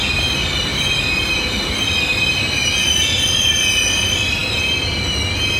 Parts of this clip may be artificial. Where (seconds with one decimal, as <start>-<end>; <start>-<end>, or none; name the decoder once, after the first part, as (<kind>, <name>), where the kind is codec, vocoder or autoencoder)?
0.0-0.7 (vocoder, BigVGAN v2); 4.0-4.4